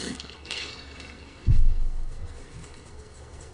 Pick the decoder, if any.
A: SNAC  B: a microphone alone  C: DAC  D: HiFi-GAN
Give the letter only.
A